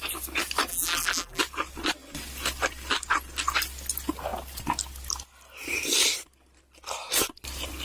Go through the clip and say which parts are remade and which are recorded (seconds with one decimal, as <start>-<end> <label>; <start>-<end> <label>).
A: 0.0-0.7 recorded; 0.7-1.4 remade; 1.4-7.8 recorded